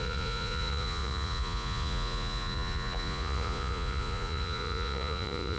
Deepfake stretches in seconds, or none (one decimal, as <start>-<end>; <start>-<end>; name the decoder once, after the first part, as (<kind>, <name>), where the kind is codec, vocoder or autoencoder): 0.0-5.6 (vocoder, Vocos)